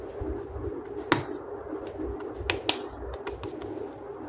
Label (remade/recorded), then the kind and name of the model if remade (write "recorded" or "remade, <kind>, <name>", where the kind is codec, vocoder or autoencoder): recorded